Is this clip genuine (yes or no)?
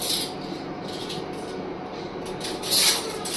yes